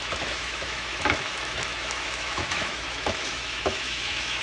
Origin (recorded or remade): remade